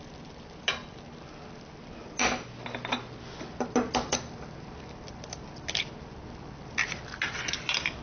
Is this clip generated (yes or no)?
no